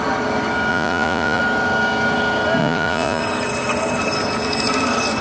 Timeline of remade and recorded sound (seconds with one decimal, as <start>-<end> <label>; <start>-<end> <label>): 0.0-0.7 recorded; 0.7-1.4 remade; 1.4-2.6 recorded; 2.6-3.2 remade; 3.2-5.2 recorded